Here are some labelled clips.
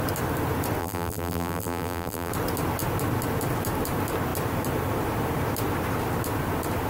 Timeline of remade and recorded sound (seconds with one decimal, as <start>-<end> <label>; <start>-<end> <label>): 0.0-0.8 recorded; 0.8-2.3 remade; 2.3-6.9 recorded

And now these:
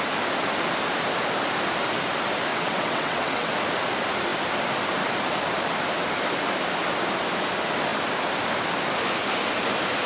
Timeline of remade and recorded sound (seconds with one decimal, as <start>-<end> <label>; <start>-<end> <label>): 0.0-2.5 recorded; 2.5-3.5 remade; 3.5-10.1 recorded

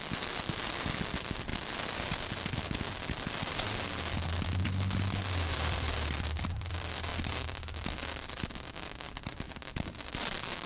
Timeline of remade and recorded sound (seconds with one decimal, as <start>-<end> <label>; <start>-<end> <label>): 0.0-1.5 remade; 1.5-5.5 recorded; 5.5-10.7 remade

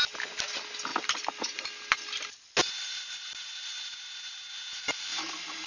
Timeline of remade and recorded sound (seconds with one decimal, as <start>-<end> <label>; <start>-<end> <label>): 0.0-5.7 recorded

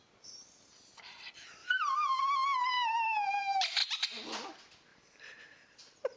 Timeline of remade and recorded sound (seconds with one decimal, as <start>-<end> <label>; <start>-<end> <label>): 0.0-1.6 recorded; 1.6-2.2 remade; 2.2-4.9 recorded; 4.9-6.2 remade

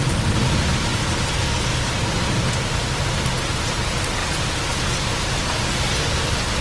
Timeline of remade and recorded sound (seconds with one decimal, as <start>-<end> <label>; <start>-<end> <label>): 0.0-6.6 recorded

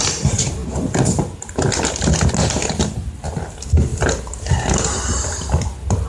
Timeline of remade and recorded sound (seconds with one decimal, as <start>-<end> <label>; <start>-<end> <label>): 0.0-6.1 recorded